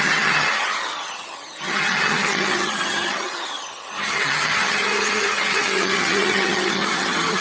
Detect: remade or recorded remade